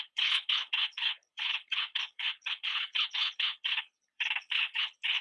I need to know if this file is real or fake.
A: fake